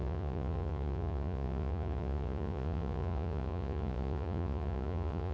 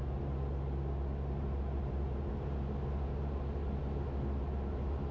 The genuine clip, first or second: second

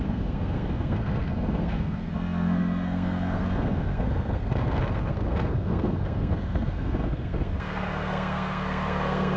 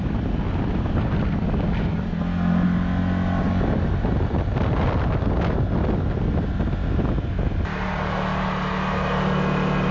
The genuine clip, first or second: second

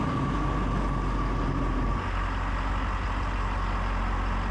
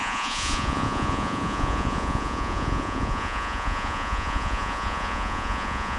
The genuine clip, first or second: first